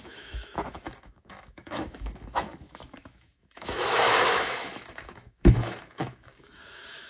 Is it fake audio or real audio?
fake